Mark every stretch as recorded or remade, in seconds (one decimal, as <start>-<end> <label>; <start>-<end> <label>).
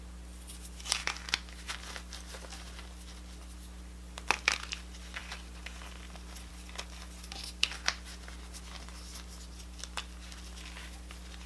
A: 0.0-11.5 recorded